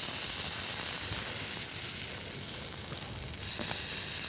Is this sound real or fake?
real